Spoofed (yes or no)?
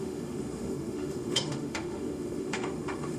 yes